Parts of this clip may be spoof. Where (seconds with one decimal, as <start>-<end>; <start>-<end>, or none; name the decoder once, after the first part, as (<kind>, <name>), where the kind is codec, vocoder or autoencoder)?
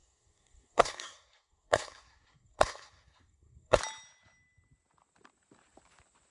0.0-3.8 (codec, SNAC)